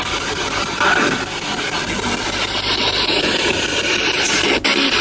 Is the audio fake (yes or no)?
no